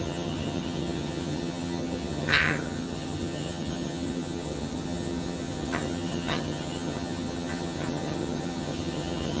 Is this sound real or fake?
fake